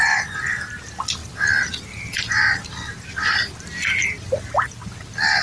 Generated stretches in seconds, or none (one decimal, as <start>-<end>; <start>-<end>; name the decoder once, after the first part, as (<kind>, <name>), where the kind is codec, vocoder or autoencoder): none